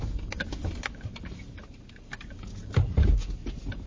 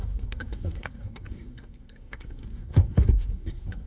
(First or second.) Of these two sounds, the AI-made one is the second